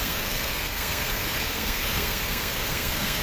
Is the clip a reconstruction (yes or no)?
yes